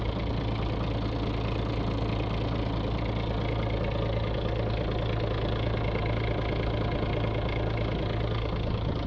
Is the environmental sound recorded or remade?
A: recorded